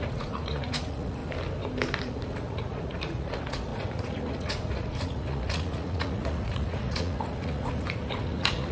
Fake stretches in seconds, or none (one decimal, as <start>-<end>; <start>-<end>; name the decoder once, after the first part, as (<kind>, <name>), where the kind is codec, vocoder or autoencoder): 0.0-1.2 (vocoder, Vocos); 2.0-8.7